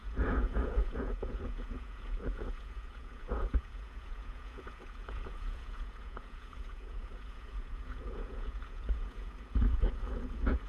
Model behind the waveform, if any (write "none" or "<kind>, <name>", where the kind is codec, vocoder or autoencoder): vocoder, Vocos